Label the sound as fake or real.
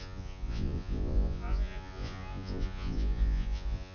fake